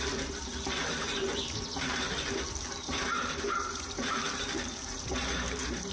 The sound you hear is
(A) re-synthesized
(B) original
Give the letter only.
A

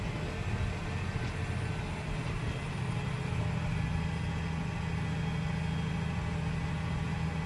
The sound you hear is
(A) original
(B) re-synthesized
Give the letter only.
A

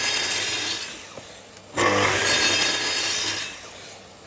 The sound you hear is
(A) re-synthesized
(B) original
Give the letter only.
B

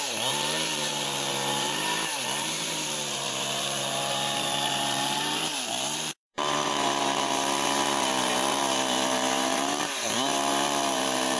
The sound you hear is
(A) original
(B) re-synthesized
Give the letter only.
B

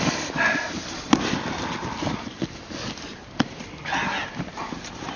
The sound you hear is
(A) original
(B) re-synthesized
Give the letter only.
A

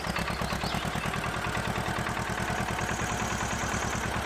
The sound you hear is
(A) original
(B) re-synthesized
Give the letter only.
A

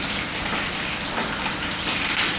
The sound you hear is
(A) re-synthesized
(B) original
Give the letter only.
B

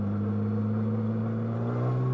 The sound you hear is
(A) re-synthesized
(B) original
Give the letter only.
B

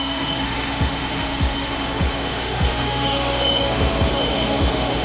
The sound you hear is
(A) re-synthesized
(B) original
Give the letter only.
A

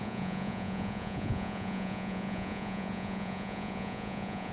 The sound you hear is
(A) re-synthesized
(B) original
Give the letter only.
A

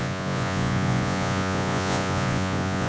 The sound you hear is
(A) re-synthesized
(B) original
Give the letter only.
A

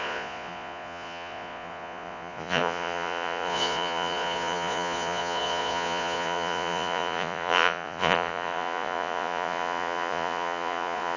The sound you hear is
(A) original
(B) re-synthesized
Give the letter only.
B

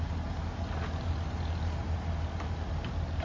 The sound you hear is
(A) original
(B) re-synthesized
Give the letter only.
A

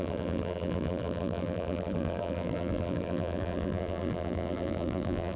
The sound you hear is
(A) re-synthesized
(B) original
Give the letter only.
A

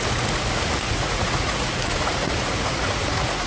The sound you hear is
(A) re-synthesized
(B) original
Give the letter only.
A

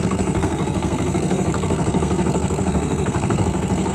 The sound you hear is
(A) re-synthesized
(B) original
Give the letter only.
A